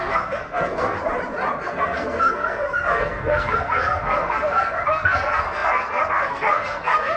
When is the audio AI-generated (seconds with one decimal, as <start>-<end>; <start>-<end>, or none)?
0.0-1.0; 1.6-7.2